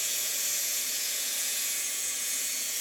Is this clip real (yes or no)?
no